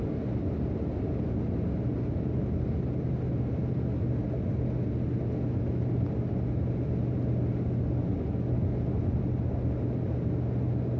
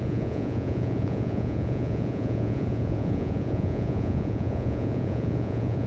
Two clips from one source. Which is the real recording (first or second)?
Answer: first